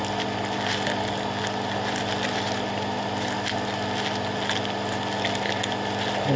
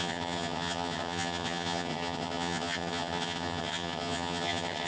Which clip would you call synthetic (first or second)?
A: second